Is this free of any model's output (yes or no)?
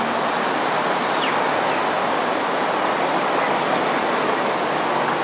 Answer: yes